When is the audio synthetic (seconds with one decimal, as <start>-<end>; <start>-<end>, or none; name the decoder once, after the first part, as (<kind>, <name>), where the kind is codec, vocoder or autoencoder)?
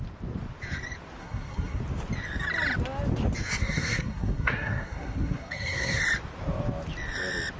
1.2-1.8 (codec, SNAC); 3.6-6.0